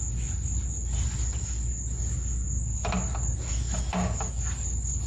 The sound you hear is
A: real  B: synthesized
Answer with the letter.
A